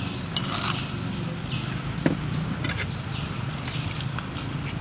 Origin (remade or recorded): recorded